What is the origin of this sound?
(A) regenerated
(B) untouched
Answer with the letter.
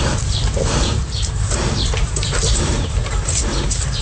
A